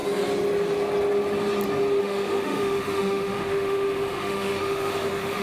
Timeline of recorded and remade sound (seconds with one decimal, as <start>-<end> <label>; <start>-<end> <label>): 0.0-2.0 recorded; 2.0-5.4 remade